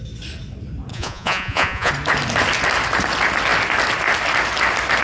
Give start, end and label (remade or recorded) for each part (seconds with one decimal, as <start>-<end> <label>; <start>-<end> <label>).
0.0-0.9 recorded; 0.9-1.9 remade; 1.9-5.0 recorded